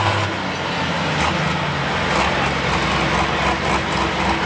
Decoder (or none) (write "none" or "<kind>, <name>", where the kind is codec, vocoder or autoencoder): none